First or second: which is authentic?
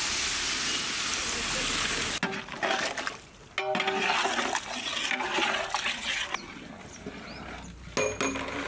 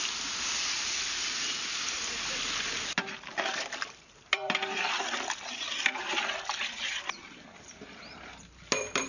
first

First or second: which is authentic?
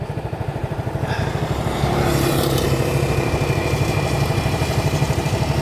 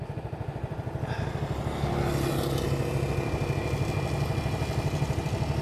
second